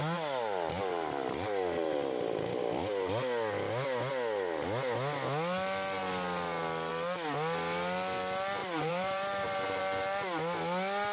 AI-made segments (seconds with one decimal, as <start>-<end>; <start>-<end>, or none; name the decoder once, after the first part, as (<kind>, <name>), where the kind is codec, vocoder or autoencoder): 8.6-9.8 (vocoder, BigVGAN v2)